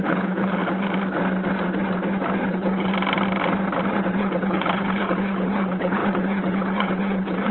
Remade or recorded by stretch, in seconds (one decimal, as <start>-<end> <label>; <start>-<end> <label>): 0.0-0.6 remade; 0.6-2.5 recorded; 2.5-2.9 remade; 2.9-4.2 recorded; 4.2-7.5 remade